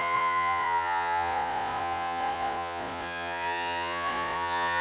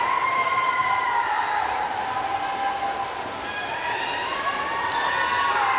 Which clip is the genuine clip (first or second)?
second